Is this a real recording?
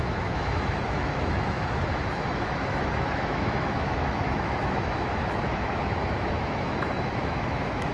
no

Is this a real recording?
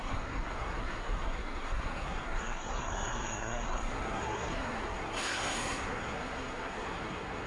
no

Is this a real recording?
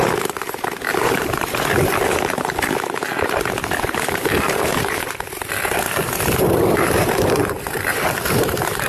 no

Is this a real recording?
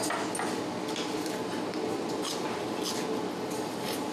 yes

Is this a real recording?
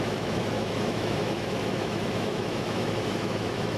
no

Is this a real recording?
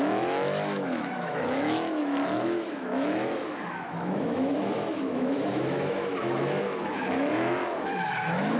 no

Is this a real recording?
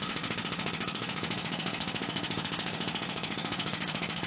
no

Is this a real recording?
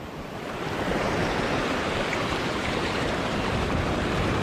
no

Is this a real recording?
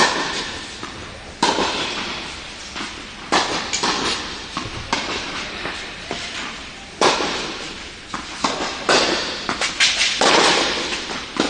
no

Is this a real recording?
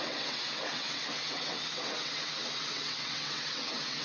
no